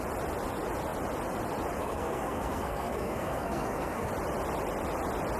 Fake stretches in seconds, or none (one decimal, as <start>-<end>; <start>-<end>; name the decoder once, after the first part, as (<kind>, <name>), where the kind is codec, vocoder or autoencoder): 1.8-4.1 (codec, SNAC)